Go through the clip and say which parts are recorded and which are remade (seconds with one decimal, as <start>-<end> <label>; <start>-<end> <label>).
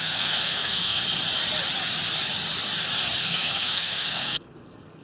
0.0-1.0 remade; 1.0-3.2 recorded; 3.2-5.0 remade